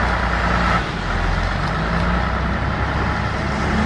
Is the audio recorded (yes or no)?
yes